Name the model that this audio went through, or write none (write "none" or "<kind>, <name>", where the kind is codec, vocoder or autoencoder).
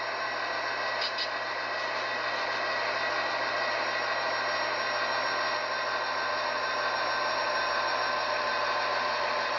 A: none